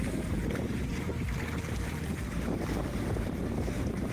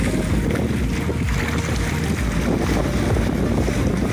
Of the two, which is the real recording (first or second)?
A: second